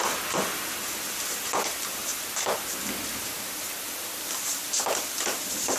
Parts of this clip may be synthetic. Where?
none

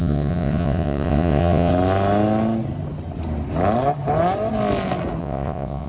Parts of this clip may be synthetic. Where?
0.0-1.7 (vocoder, WaveNeXt); 5.2-5.9